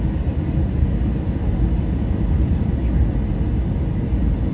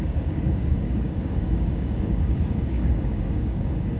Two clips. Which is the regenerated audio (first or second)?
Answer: second